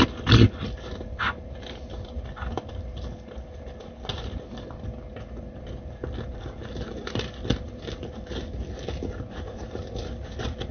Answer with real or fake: real